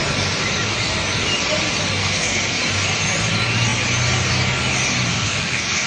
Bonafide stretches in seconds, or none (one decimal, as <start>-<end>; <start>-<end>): 0.0-2.0; 2.6-5.1